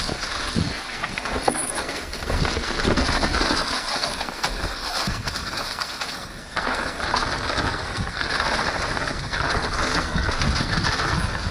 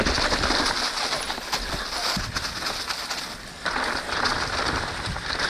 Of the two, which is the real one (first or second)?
second